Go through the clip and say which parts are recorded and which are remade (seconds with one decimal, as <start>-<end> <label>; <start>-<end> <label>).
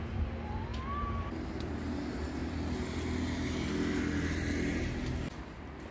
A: 0.0-5.9 recorded